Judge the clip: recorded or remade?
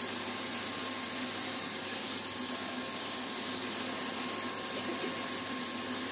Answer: recorded